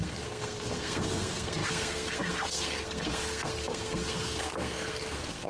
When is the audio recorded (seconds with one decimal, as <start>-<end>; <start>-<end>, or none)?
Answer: none